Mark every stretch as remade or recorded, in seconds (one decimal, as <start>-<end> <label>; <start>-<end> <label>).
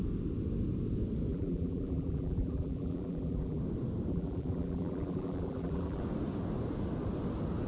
0.0-1.3 recorded; 1.3-3.6 remade; 3.6-4.1 recorded; 4.1-6.0 remade; 6.0-7.7 recorded